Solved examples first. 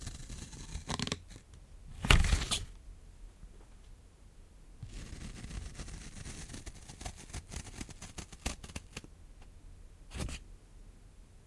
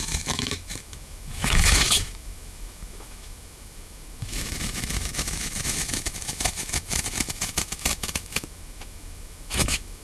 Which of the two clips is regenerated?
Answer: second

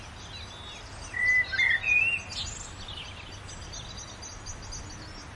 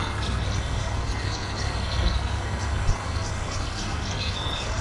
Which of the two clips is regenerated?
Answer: second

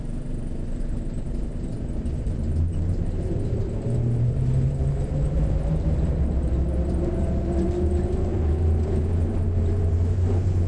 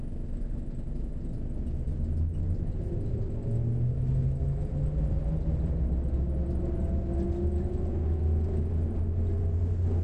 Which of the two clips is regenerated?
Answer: first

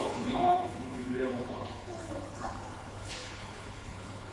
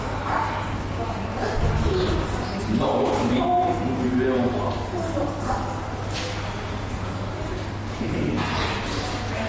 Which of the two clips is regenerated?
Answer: first